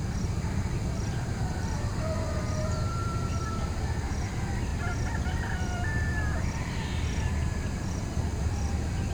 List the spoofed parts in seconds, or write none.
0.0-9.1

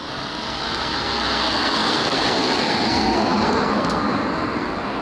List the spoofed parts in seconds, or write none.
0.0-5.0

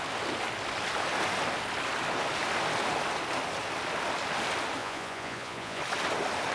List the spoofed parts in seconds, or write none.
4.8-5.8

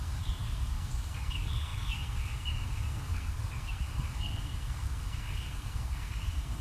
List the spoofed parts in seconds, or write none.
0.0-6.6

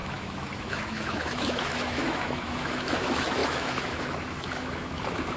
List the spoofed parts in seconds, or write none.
0.0-5.4

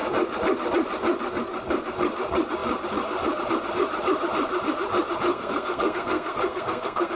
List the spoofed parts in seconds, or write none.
5.3-7.1

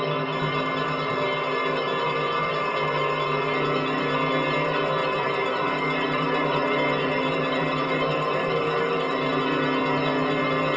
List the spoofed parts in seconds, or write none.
5.0-9.4

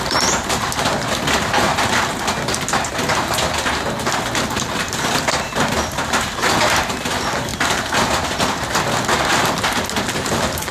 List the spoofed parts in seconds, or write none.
none